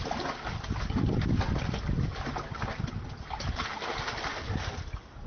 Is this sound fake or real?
real